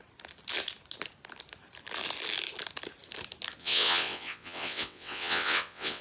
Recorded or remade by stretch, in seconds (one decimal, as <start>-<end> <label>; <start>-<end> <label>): 0.0-3.6 recorded; 3.6-6.0 remade